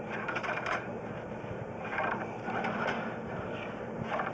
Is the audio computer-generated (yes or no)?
yes